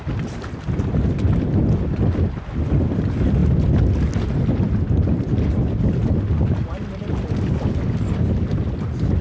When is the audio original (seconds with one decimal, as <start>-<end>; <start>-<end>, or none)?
0.0-9.2